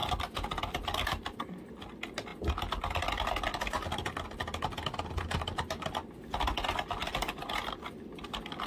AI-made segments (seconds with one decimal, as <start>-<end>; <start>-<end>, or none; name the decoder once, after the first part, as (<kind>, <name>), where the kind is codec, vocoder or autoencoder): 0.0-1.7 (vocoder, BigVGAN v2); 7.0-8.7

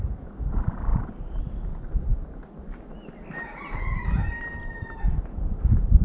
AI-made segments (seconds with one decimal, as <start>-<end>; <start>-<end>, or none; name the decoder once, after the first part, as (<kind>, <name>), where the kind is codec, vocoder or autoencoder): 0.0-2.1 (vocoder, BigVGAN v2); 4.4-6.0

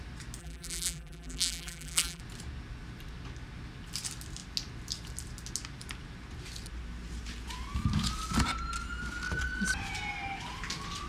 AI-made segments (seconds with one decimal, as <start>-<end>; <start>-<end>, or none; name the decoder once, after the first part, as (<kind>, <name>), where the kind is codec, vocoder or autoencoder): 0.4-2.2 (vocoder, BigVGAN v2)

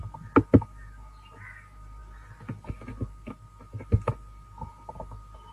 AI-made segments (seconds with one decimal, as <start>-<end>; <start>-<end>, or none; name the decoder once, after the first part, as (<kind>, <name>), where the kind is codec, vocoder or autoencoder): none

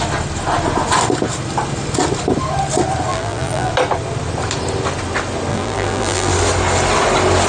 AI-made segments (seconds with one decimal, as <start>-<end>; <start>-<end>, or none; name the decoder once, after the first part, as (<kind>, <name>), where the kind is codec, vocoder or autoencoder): 3.1-3.7 (vocoder, BigVGAN v2); 5.5-6.3

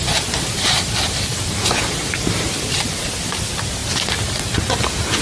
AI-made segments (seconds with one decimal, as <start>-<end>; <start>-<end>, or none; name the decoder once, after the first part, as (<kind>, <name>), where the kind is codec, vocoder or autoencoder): none

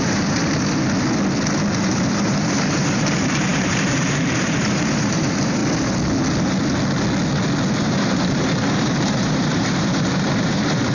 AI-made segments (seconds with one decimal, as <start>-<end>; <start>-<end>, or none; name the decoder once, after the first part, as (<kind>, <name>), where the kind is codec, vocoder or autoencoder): 0.0-0.4 (vocoder, BigVGAN v2); 1.8-5.6; 7.8-10.9

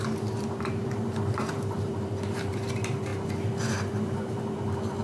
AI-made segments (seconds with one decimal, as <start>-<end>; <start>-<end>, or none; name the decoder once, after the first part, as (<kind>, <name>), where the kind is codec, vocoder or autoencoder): 0.0-3.1 (vocoder, BigVGAN v2); 3.6-5.0